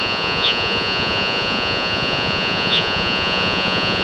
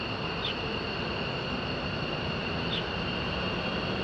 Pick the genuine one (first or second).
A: second